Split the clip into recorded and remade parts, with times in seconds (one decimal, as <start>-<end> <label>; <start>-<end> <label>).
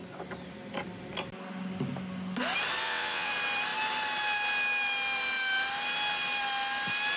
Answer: 0.0-2.8 recorded; 2.8-3.3 remade; 3.3-7.2 recorded